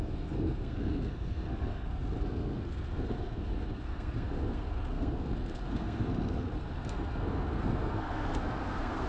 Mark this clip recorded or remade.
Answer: remade